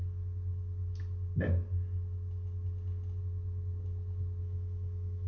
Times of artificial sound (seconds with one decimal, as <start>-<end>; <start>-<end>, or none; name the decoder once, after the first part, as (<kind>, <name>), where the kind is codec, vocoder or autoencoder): 4.4-5.3 (autoencoder, DAC-VAE)